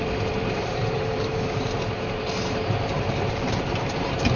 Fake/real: fake